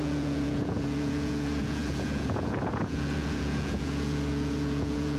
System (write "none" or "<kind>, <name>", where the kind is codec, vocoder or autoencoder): vocoder, Vocos